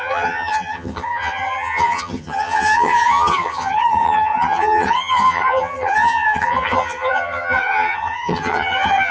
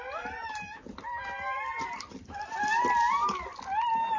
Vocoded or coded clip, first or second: first